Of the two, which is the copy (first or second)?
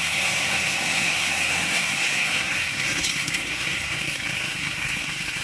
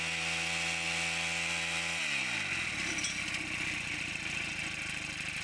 first